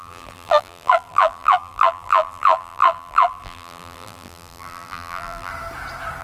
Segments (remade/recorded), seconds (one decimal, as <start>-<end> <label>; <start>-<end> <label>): 0.0-5.5 remade; 5.5-6.2 recorded